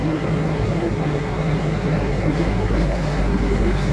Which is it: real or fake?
fake